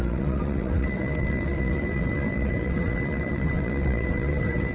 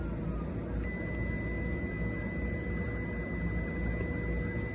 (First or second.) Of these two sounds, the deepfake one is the first